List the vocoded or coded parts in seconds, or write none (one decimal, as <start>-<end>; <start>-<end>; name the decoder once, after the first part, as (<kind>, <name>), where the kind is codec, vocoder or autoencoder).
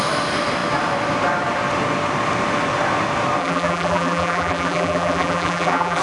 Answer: 3.4-6.0 (vocoder, BigVGAN v2)